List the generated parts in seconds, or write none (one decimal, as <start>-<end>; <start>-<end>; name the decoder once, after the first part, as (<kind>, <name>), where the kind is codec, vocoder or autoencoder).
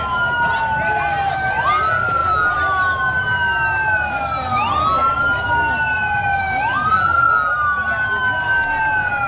none